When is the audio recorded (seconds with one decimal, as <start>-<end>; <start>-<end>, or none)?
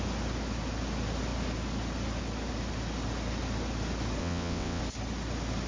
0.0-4.2; 4.8-5.7